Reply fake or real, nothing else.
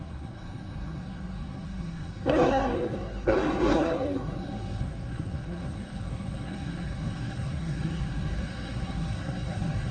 fake